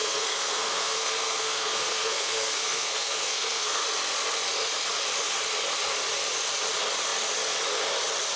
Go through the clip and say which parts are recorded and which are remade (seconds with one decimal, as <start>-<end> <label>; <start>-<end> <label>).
0.0-3.8 remade; 3.8-8.4 recorded